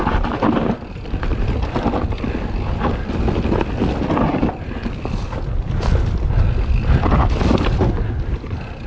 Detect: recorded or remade recorded